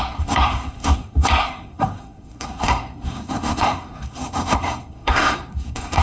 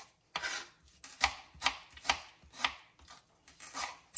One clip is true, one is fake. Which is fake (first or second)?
first